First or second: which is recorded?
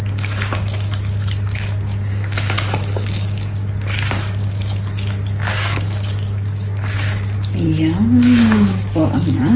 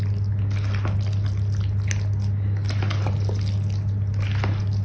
second